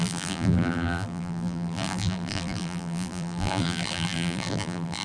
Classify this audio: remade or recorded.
remade